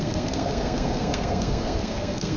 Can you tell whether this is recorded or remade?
remade